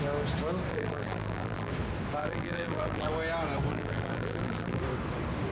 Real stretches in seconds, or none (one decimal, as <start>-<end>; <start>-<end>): 0.0-0.7; 1.7-2.2; 3.1-3.7; 4.8-5.5